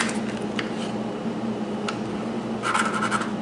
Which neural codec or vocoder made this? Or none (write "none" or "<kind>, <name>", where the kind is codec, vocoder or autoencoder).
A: none